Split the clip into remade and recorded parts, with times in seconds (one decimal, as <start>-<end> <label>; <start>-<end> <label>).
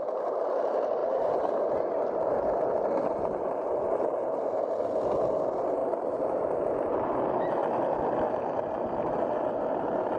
0.0-1.0 recorded; 1.0-1.7 remade; 1.7-5.8 recorded; 5.8-6.4 remade; 6.4-10.2 recorded